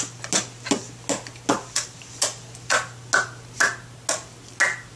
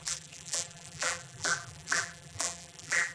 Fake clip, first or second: second